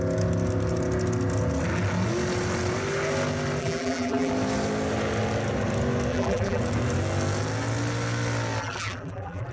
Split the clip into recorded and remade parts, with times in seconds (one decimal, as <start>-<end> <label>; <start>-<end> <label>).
0.0-3.6 recorded; 3.6-4.3 remade; 4.3-6.1 recorded; 6.1-6.6 remade; 6.6-8.6 recorded; 8.6-9.5 remade